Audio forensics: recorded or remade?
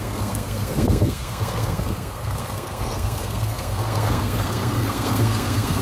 remade